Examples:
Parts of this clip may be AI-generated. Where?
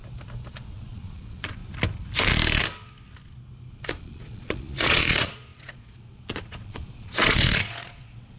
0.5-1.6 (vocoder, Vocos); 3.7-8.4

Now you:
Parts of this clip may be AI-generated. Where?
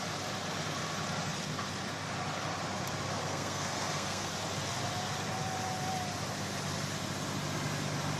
3.2-4.3 (codec, SNAC)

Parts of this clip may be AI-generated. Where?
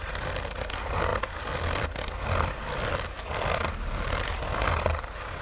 none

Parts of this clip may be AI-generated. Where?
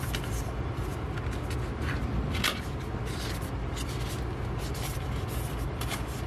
0.0-0.9 (vocoder, BigVGAN v2); 4.7-6.3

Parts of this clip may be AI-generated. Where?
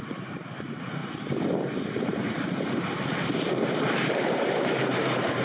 0.0-1.0 (vocoder, BigVGAN v2); 3.7-5.4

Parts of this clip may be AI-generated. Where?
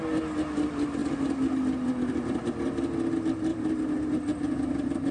3.5-4.2 (vocoder, BigVGAN v2)